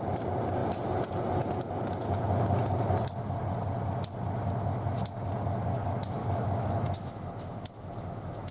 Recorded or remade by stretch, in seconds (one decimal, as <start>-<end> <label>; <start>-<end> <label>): 0.0-6.2 recorded; 6.2-8.5 remade